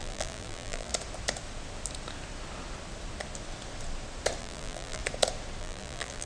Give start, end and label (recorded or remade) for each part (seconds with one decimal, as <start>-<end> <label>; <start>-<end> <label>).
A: 0.0-0.9 remade; 0.9-4.4 recorded; 4.4-5.0 remade; 5.0-5.6 recorded; 5.6-6.3 remade